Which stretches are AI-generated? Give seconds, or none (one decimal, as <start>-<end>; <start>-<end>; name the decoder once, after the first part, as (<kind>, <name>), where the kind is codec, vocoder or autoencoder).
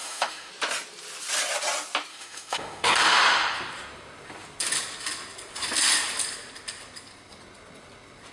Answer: 0.0-0.5 (autoencoder, DAC-VAE); 2.1-2.9